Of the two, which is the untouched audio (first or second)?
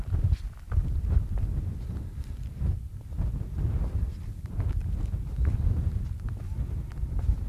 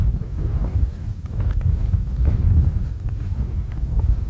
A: first